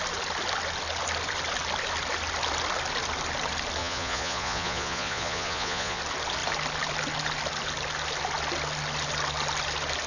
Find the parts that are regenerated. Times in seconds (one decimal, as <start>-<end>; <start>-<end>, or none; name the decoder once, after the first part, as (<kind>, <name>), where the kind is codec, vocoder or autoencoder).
3.8-6.0 (vocoder, Vocos)